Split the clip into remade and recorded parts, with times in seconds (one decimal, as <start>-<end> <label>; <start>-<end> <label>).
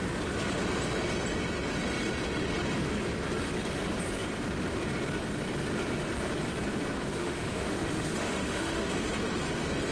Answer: 0.0-7.2 recorded; 7.2-8.9 remade; 8.9-9.9 recorded